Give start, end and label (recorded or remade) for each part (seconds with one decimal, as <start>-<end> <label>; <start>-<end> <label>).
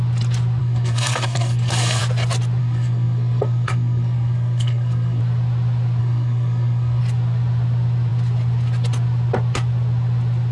0.0-0.6 recorded; 0.6-2.0 remade; 2.0-2.6 recorded; 2.6-5.2 remade; 5.2-6.0 recorded; 6.0-7.0 remade; 7.0-10.5 recorded